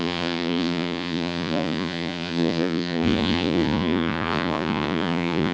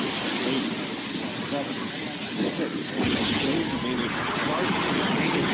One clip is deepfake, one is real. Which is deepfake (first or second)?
first